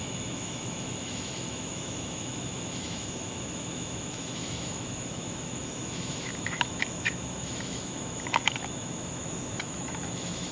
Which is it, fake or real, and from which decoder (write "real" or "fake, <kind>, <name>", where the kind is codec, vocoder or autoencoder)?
fake, autoencoder, DAC-VAE